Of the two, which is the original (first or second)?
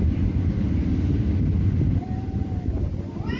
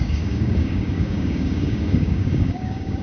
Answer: first